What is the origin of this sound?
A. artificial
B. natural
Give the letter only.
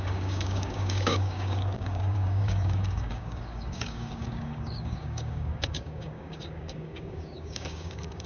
A